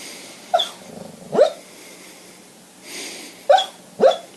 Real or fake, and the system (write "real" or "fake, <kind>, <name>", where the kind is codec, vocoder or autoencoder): real